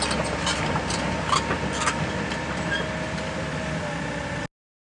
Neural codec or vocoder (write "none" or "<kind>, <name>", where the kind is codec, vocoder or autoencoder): none